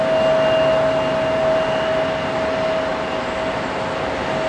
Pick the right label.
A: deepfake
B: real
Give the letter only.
B